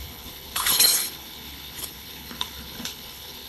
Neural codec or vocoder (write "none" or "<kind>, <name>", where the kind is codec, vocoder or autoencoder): codec, HILCodec